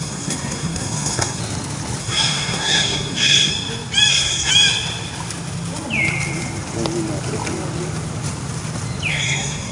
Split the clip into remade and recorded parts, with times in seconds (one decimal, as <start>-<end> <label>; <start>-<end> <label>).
0.0-1.4 remade; 1.4-2.0 recorded; 2.0-3.5 remade; 3.5-4.1 recorded; 4.1-4.5 remade; 4.5-9.1 recorded; 9.1-9.7 remade